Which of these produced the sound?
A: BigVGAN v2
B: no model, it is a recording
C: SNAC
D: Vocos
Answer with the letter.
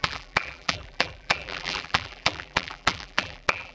A